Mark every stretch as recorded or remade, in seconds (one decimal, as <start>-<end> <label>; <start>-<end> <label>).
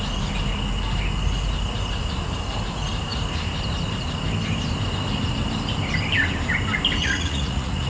0.0-7.0 recorded; 7.0-7.9 remade